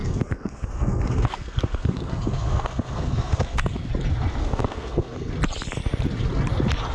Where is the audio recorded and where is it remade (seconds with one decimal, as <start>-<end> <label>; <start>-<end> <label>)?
0.0-3.9 remade; 3.9-4.4 recorded; 4.4-5.3 remade; 5.3-6.9 recorded